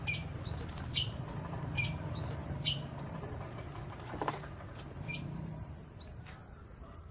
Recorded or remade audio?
remade